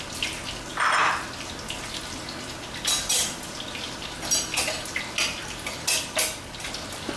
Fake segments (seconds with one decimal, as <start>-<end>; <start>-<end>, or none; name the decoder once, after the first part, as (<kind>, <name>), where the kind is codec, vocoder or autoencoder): 0.7-1.4 (vocoder, BigVGAN v2)